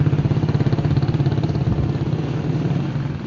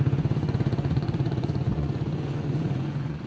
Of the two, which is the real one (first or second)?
first